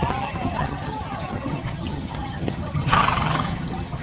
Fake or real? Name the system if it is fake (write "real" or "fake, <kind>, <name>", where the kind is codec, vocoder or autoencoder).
fake, vocoder, HiFi-GAN